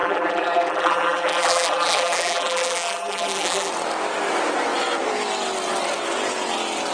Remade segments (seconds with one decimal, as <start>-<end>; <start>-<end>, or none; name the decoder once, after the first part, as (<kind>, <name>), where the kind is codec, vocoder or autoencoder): 0.0-3.7 (vocoder, BigVGAN v2)